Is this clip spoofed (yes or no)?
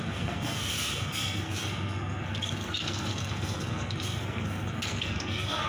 yes